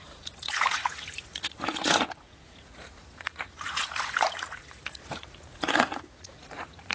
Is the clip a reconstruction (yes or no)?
yes